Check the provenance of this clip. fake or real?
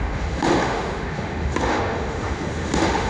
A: fake